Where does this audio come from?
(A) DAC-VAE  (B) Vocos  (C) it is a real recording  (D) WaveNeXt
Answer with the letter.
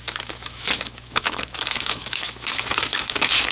A